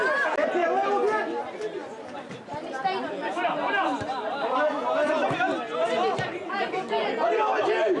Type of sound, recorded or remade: recorded